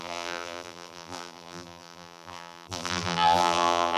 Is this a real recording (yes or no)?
no